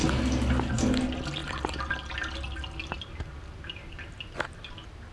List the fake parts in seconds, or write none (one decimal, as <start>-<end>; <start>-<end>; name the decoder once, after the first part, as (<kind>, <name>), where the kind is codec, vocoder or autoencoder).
1.4-3.8 (vocoder, BigVGAN v2)